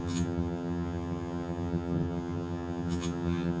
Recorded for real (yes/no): no